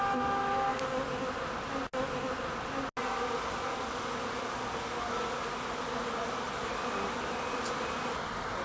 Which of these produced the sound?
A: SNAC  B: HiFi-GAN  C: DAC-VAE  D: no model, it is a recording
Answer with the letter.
D